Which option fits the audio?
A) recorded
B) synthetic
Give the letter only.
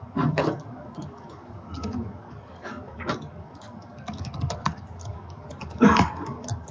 B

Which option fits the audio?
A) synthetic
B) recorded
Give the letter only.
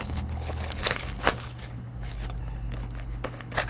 A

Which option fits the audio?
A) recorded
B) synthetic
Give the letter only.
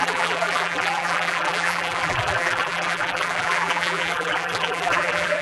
B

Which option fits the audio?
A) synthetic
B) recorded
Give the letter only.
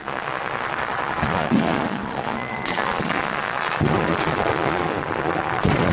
A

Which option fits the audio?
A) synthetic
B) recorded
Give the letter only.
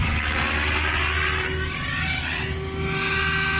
B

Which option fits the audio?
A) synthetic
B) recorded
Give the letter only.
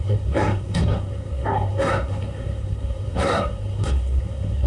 A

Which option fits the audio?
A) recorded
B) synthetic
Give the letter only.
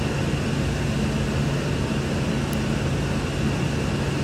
A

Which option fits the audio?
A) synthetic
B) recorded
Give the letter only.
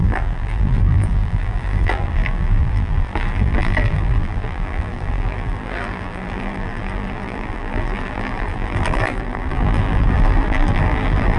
A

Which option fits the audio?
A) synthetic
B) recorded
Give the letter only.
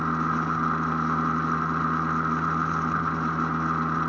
B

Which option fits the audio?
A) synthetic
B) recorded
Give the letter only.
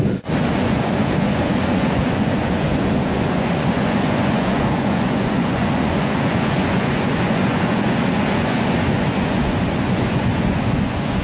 A